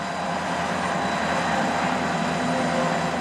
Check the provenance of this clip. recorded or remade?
recorded